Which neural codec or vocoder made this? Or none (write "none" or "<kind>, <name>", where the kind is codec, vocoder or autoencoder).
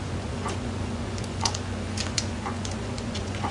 vocoder, Vocos